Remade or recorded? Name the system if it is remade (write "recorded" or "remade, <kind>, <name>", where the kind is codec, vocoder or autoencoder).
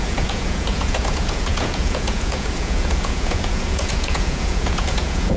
remade, vocoder, Vocos